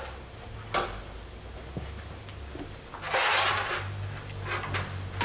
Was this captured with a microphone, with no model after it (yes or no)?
yes